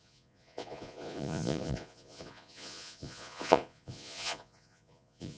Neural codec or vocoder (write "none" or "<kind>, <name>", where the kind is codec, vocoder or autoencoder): vocoder, Vocos